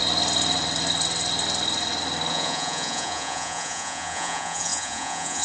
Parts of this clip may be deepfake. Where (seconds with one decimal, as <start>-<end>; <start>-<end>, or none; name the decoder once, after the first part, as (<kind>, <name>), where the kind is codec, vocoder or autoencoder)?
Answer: 2.3-5.4 (vocoder, Vocos)